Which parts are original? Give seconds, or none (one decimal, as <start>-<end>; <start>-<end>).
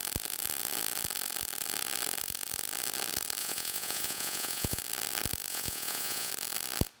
0.0-3.4; 4.8-5.5; 6.3-7.0